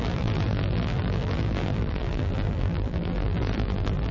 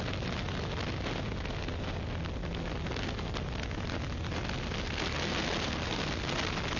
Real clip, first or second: second